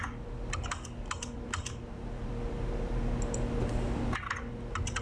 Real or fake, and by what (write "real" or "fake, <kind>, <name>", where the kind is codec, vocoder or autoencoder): real